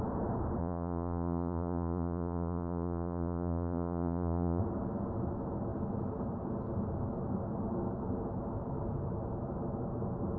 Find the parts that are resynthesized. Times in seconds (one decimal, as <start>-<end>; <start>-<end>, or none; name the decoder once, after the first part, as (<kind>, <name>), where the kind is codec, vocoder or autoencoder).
0.6-4.6 (vocoder, Vocos)